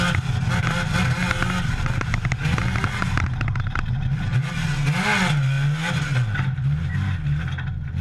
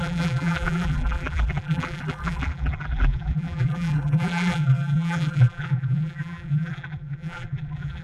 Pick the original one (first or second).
first